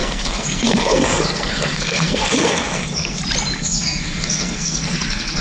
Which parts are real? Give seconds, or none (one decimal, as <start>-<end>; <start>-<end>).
3.2-3.6